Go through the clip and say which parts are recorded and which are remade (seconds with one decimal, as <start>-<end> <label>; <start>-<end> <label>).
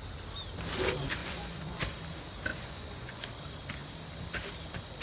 0.0-1.2 recorded; 1.2-1.8 remade; 1.8-2.5 recorded; 2.5-3.3 remade; 3.3-5.0 recorded